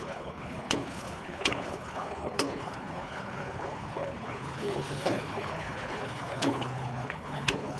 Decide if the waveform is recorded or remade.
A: remade